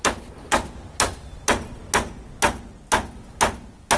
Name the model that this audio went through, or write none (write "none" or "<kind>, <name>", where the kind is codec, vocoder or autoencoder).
none